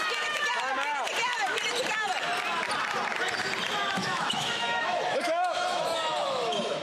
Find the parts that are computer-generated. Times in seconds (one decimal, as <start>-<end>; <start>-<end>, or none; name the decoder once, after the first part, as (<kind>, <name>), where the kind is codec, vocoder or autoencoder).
4.0-6.8 (autoencoder, DAC-VAE)